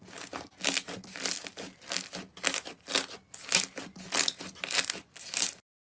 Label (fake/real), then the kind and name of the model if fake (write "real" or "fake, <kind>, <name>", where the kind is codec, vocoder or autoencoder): real